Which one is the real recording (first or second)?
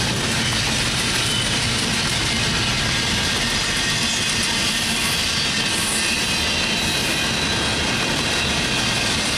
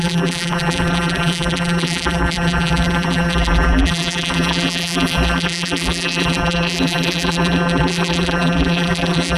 first